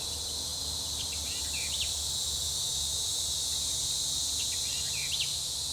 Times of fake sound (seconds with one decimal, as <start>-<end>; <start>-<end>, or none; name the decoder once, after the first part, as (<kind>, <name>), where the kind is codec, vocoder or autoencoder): none